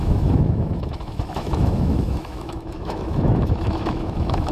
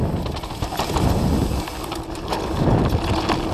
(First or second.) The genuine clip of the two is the second